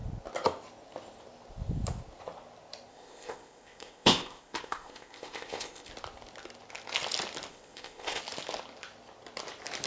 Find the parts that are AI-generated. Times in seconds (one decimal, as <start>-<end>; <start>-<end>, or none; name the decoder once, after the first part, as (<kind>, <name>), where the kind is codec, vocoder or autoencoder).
2.9-5.9 (codec, ZipCodec); 7.5-8.2